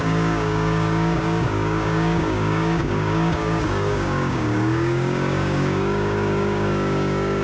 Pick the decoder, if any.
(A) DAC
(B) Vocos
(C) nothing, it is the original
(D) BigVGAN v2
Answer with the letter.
A